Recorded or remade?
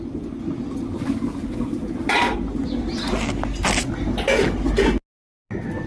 recorded